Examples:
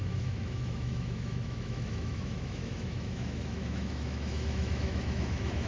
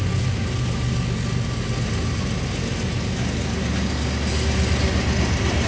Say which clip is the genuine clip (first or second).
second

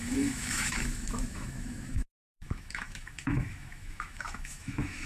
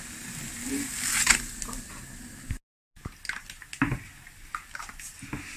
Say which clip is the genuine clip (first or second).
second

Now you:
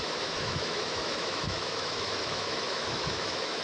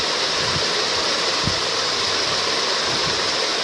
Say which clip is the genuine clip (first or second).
second